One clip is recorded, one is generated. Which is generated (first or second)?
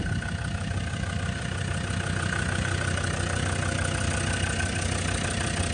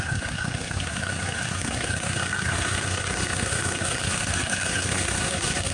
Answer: second